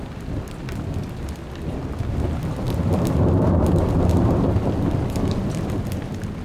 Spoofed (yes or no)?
no